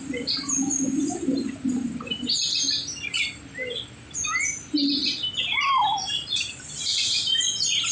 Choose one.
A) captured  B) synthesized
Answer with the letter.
A